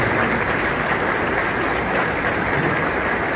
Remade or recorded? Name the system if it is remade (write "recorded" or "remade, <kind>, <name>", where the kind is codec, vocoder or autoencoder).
recorded